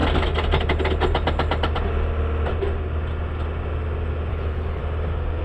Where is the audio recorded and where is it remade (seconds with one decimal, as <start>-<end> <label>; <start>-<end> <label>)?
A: 0.0-4.3 recorded; 4.3-4.8 remade; 4.8-5.4 recorded